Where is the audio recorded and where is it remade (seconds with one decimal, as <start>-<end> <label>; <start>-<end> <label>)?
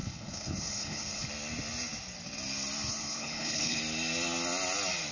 0.0-1.3 remade; 1.3-2.9 recorded; 2.9-3.8 remade; 3.8-5.1 recorded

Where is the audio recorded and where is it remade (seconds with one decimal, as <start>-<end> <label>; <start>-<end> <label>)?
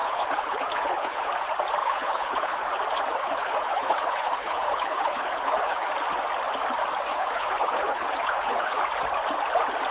0.0-1.3 remade; 1.3-1.8 recorded; 1.8-2.7 remade; 2.7-3.2 recorded; 3.2-5.9 remade; 5.9-7.1 recorded; 7.1-8.8 remade; 8.8-9.9 recorded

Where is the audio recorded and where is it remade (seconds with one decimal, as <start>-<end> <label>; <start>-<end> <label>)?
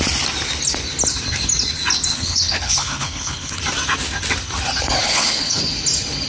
0.0-2.1 recorded; 2.1-3.6 remade; 3.6-5.0 recorded; 5.0-5.6 remade; 5.6-6.3 recorded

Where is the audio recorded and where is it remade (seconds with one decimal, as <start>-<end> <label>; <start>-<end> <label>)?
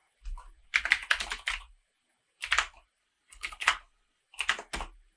0.0-3.0 recorded; 3.0-4.2 remade; 4.2-5.2 recorded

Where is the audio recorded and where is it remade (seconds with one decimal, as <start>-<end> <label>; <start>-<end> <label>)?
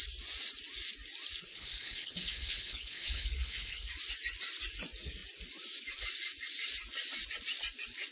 0.0-1.5 recorded; 1.5-3.9 remade; 3.9-8.1 recorded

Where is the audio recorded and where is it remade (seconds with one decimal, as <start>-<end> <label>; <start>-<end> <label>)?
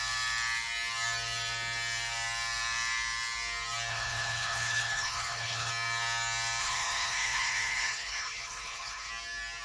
0.0-3.9 recorded; 3.9-5.7 remade; 5.7-6.6 recorded; 6.6-9.1 remade; 9.1-9.6 recorded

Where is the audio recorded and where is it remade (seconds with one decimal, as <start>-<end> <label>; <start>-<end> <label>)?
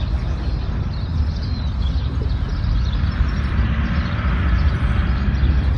0.0-5.8 recorded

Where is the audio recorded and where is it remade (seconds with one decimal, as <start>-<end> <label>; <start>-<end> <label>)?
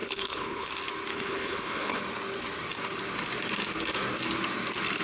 0.0-0.7 remade; 0.7-1.1 recorded; 1.1-2.0 remade; 2.0-5.0 recorded